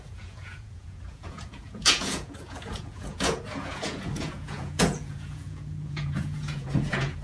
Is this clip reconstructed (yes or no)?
yes